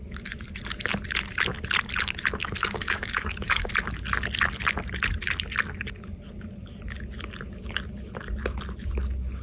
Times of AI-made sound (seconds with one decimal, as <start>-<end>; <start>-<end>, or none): 2.4-3.7